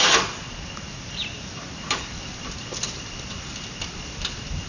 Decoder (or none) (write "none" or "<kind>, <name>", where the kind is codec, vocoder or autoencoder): none